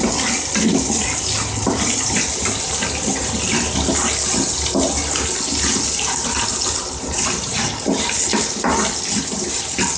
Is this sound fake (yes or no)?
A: no